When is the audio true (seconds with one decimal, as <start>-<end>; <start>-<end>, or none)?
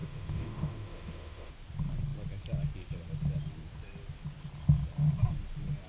1.5-5.9